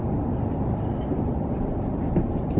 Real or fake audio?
real